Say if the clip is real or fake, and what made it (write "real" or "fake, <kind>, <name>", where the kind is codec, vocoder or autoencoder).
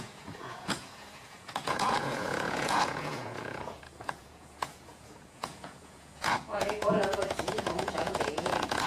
fake, vocoder, Vocos